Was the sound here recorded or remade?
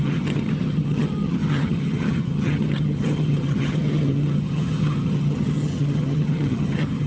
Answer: remade